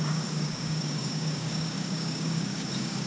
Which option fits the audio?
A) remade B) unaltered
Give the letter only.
A